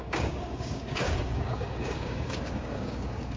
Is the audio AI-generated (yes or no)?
yes